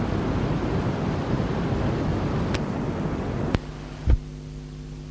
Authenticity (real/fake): real